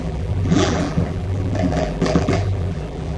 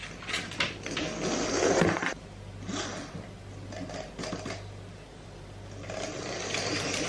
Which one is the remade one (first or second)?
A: first